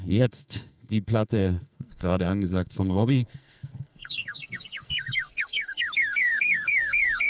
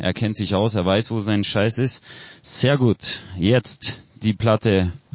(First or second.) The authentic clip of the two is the second